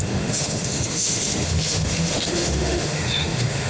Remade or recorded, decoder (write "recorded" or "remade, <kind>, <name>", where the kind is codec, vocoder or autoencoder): remade, autoencoder, DAC-VAE